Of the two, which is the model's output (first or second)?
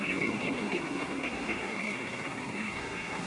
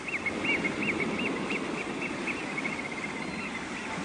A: first